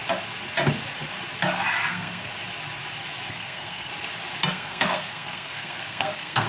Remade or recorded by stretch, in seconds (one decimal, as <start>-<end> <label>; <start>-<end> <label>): 0.0-1.9 recorded; 1.9-2.3 remade; 2.3-3.3 recorded; 3.3-3.9 remade; 3.9-4.5 recorded; 4.5-6.5 remade